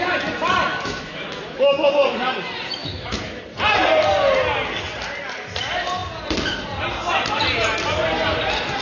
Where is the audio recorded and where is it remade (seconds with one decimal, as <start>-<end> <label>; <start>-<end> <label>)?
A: 0.0-0.7 recorded; 0.7-1.9 remade; 1.9-2.8 recorded; 2.8-3.4 remade; 3.4-8.8 recorded